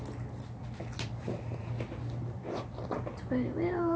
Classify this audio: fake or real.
real